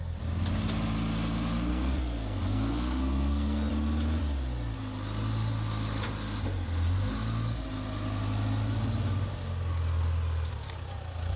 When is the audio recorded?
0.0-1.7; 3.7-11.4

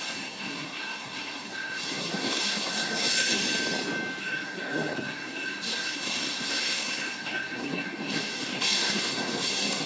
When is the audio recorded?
3.4-4.2

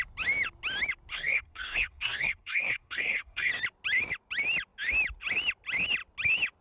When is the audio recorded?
0.0-1.1; 3.5-6.6

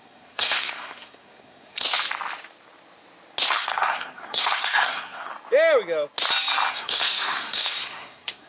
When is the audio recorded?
1.8-3.5; 5.3-6.7

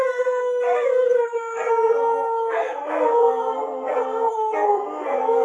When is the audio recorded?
none

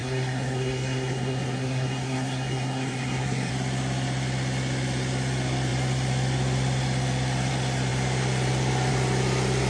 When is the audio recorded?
3.5-9.7